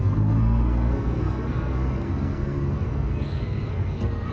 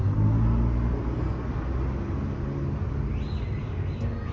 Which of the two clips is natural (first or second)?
second